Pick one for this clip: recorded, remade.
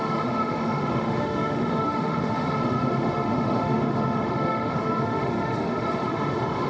remade